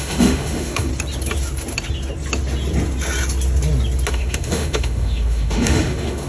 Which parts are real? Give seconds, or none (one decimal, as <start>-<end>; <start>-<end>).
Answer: 0.9-4.1